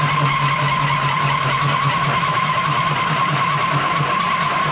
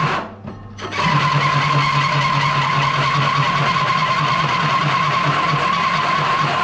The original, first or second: second